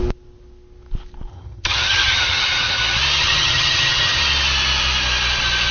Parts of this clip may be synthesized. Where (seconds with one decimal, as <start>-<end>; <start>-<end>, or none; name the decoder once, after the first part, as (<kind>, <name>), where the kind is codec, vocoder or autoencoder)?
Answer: 1.3-2.8 (vocoder, HiFi-GAN); 3.2-4.2